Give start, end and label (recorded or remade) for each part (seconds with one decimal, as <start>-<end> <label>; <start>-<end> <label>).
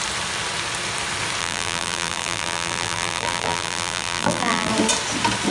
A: 0.0-1.4 recorded; 1.4-4.7 remade; 4.7-5.5 recorded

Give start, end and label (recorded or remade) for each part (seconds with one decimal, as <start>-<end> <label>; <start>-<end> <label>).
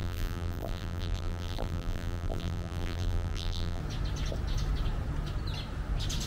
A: 0.0-3.8 remade; 3.8-6.3 recorded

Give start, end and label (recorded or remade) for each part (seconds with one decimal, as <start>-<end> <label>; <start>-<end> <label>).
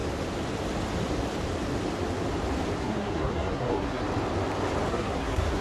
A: 0.0-2.8 recorded; 2.8-4.0 remade; 4.0-4.9 recorded; 4.9-5.6 remade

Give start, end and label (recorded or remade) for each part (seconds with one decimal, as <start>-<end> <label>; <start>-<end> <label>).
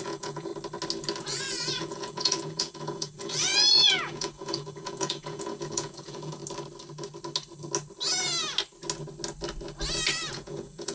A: 0.0-0.5 remade; 0.5-1.2 recorded; 1.2-6.4 remade; 6.4-10.3 recorded; 10.3-10.9 remade